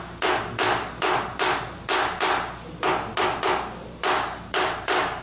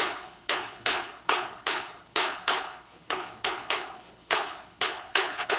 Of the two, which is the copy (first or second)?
second